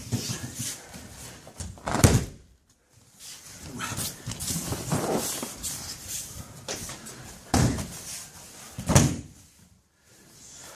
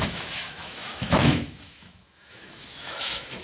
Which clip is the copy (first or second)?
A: second